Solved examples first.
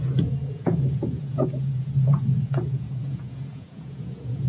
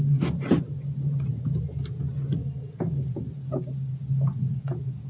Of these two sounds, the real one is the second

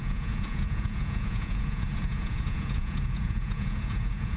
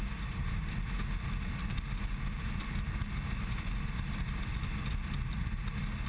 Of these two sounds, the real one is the second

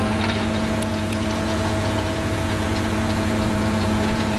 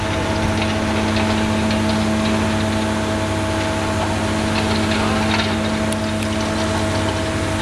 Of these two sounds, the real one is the second